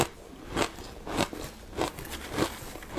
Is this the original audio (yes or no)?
yes